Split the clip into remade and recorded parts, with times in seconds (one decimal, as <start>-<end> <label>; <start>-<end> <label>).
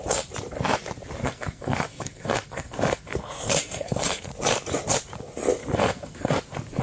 0.0-1.2 recorded; 1.2-4.3 remade; 4.3-5.6 recorded; 5.6-6.3 remade; 6.3-6.8 recorded